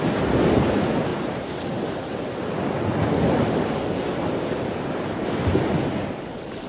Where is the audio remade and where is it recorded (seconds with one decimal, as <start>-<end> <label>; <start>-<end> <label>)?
0.0-6.7 recorded